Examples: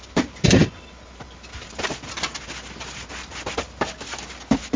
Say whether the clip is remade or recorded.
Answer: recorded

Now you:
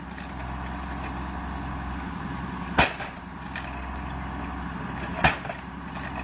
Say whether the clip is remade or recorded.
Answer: recorded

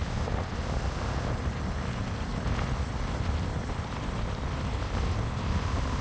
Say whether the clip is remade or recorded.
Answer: recorded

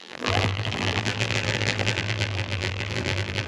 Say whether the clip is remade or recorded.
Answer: remade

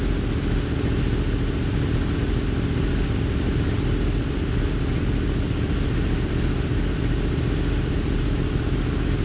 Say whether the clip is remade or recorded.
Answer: recorded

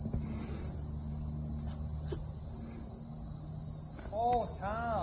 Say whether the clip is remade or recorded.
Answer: recorded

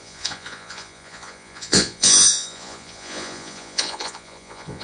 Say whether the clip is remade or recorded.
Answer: remade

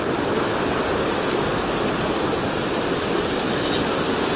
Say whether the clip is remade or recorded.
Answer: recorded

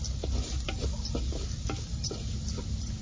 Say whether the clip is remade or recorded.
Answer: recorded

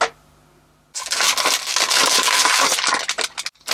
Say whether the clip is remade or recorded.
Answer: recorded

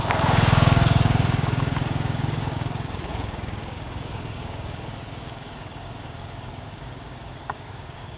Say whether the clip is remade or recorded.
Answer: remade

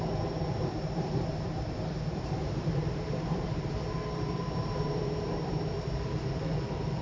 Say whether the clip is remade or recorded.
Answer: remade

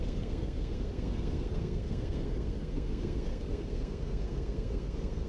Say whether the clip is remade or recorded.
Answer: remade